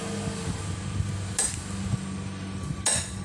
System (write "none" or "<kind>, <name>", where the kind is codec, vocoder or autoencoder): none